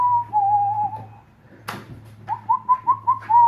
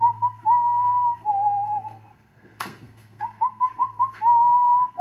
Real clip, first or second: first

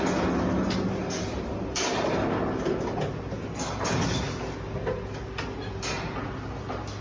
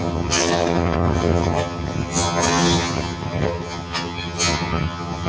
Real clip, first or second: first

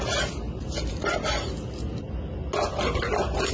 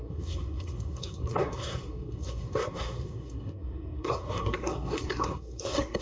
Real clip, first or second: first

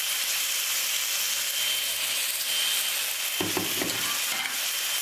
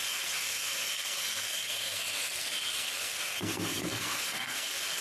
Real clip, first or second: first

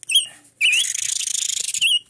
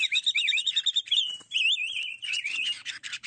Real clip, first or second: first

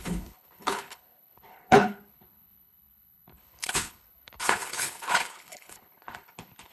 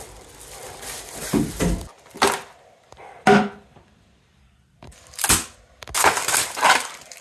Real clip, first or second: second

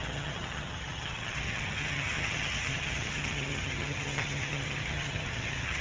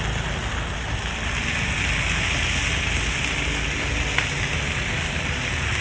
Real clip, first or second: second